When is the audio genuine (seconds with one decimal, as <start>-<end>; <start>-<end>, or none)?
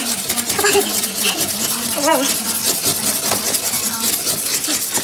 0.0-5.0